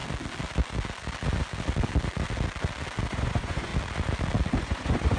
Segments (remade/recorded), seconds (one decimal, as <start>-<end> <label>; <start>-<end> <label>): 0.0-3.1 recorded; 3.1-3.7 remade; 3.7-4.6 recorded; 4.6-5.2 remade